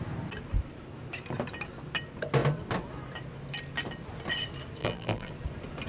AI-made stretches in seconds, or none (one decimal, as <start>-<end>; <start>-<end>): 4.8-5.3